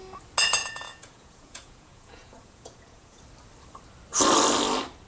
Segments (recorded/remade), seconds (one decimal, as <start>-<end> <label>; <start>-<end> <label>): 0.0-0.6 recorded; 0.6-3.2 remade; 3.2-5.1 recorded